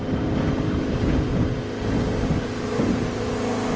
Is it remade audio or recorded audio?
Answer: recorded